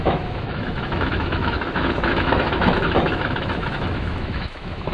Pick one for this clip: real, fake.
fake